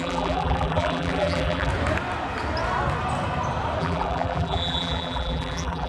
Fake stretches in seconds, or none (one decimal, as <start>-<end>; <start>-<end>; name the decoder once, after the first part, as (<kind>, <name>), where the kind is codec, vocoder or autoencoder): 0.0-1.7 (vocoder, BigVGAN v2); 3.8-5.9